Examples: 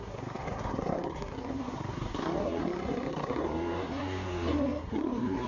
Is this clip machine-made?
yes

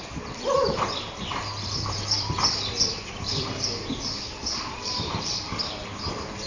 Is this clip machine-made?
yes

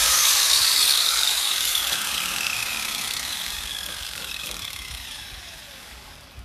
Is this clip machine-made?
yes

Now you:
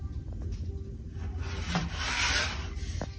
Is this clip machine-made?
no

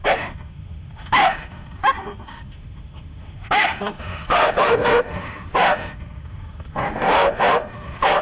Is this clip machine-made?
yes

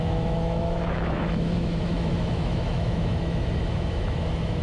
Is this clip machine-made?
yes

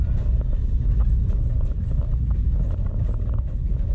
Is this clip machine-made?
no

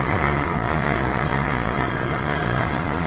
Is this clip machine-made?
yes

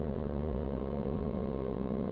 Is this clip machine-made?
yes